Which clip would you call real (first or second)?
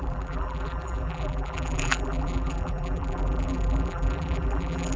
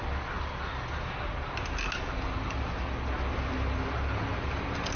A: second